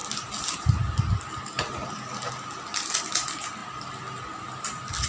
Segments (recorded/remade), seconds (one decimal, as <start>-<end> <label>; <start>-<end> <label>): 0.0-5.1 recorded